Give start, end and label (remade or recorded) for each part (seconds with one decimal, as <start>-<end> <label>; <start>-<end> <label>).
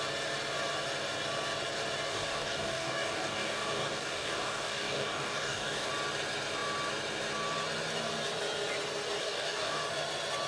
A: 0.0-2.1 recorded; 2.1-5.9 remade; 5.9-9.2 recorded; 9.2-9.8 remade; 9.8-10.5 recorded